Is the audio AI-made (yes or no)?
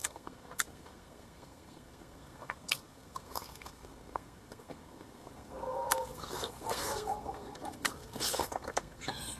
yes